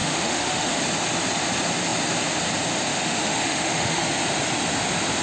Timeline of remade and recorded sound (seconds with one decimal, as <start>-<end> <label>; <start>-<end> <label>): 0.0-0.8 remade; 0.8-2.9 recorded; 2.9-4.0 remade; 4.0-5.2 recorded

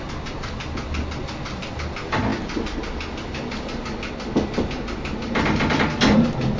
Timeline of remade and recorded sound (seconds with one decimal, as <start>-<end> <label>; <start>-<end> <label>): 0.0-6.6 recorded